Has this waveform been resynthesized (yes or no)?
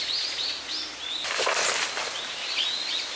no